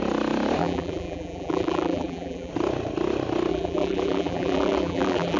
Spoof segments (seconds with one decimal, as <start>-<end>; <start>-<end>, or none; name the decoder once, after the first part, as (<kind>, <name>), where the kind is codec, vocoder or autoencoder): 0.6-2.5 (vocoder, BigVGAN v2); 3.5-5.4